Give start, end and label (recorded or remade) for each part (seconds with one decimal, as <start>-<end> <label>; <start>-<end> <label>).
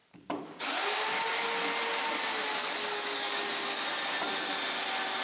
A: 0.0-0.6 remade; 0.6-2.6 recorded; 2.6-3.4 remade; 3.4-5.2 recorded